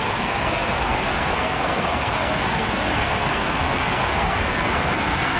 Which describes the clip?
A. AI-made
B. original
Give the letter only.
A